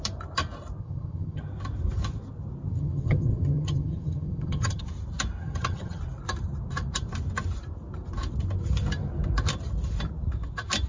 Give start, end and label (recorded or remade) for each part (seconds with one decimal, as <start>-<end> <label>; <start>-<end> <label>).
0.0-0.8 recorded; 0.8-1.4 remade; 1.4-2.7 recorded; 2.7-4.8 remade; 4.8-5.4 recorded; 5.4-6.0 remade; 6.0-10.9 recorded